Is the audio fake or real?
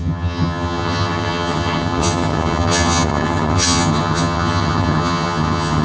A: fake